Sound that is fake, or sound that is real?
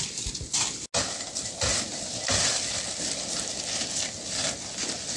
real